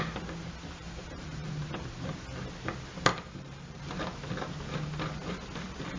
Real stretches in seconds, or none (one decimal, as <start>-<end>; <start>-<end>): 0.0-0.8; 1.5-3.1; 3.8-6.0